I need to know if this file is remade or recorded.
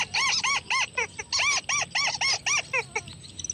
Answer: recorded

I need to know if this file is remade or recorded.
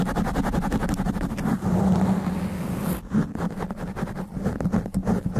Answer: recorded